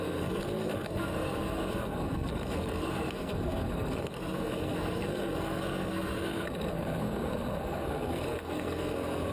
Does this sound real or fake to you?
fake